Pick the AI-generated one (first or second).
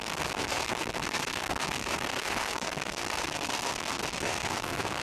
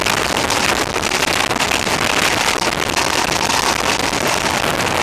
first